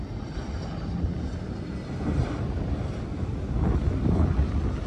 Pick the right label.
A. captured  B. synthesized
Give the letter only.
A